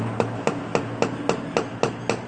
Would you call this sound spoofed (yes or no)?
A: no